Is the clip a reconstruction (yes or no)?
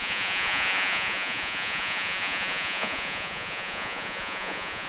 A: yes